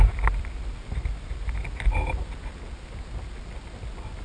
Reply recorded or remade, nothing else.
recorded